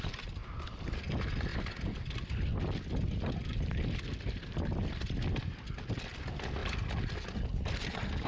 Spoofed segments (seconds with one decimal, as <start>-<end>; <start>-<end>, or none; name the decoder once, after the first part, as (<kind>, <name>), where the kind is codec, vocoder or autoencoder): none